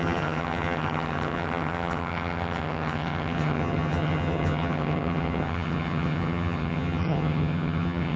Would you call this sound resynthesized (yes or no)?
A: yes